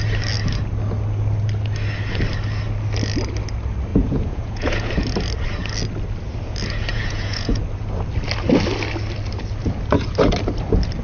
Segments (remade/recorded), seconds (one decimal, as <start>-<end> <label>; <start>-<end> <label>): 0.0-3.9 recorded; 3.9-4.9 remade; 4.9-6.9 recorded; 6.9-7.6 remade; 7.6-11.0 recorded